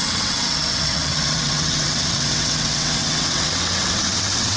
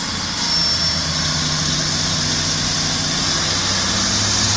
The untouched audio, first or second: second